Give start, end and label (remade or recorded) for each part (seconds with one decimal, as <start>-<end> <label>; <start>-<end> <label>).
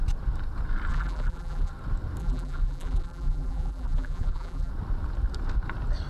0.0-0.9 recorded; 0.9-1.7 remade; 1.7-2.2 recorded; 2.2-4.7 remade; 4.7-6.1 recorded